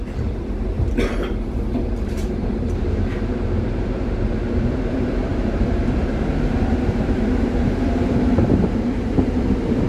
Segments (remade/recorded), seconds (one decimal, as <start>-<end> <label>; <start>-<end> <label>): 0.0-5.3 remade; 5.3-6.7 recorded; 6.7-9.9 remade